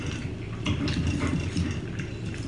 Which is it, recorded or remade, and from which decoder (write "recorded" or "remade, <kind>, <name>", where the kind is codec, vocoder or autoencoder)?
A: recorded